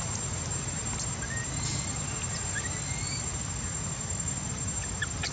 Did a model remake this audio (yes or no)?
no